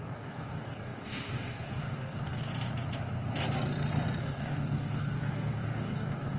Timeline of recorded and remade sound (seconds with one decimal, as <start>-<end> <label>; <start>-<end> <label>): 0.0-2.5 remade; 2.5-4.2 recorded; 4.2-6.4 remade